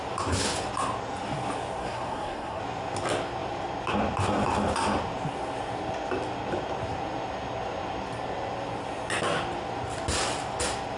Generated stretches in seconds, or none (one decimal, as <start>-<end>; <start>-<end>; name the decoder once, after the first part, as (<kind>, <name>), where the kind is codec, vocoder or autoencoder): 1.8-2.6 (codec, SNAC)